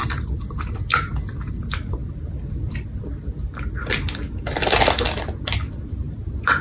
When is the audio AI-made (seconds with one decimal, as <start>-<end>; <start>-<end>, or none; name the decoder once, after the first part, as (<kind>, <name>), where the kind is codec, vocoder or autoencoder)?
0.0-3.4 (vocoder, BigVGAN v2); 5.9-6.6